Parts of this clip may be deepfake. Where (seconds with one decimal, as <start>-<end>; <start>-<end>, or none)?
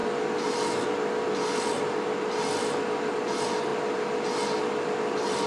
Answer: none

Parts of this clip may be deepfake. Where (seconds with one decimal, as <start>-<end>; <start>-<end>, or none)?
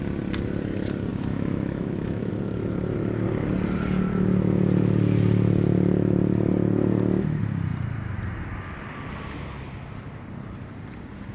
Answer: 1.1-2.3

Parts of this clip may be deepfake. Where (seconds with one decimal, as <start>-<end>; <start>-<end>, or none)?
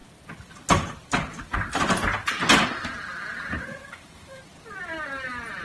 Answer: 3.8-4.4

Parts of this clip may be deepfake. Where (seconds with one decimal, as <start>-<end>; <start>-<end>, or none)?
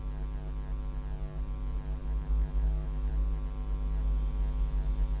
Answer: 2.0-3.1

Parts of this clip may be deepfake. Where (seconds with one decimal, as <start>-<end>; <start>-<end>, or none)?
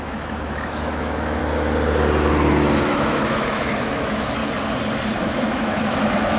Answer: 0.0-1.4; 2.8-4.4; 5.2-6.4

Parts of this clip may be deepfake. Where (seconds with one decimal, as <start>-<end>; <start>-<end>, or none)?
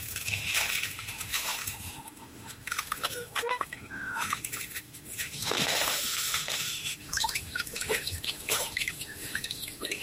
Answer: 0.0-10.0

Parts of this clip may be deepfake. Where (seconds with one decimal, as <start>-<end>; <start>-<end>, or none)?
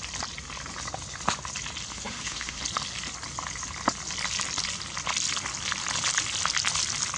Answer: 1.9-2.6